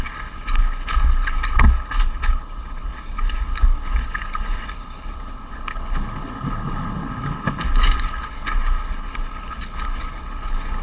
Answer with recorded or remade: remade